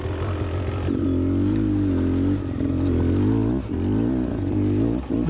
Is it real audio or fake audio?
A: real